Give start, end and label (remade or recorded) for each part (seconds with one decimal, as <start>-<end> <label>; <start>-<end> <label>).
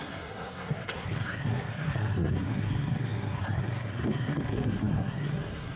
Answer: 0.0-5.8 remade